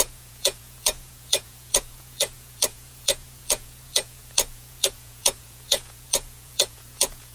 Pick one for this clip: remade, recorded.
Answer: remade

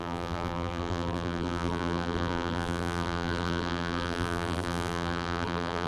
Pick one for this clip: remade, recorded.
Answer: remade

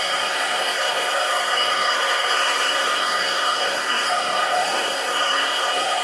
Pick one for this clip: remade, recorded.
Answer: remade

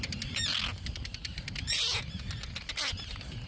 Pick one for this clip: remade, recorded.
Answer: recorded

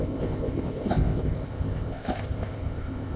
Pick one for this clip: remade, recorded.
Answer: remade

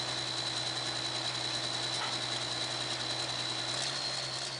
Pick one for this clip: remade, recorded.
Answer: recorded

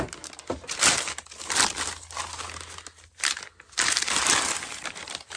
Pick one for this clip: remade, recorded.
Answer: recorded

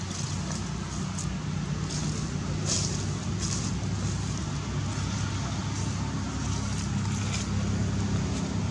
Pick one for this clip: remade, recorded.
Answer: recorded